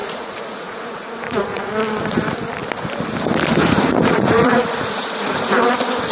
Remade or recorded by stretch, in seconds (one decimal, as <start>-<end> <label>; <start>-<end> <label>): 0.0-1.7 remade; 1.7-3.6 recorded; 3.6-5.6 remade; 5.6-6.1 recorded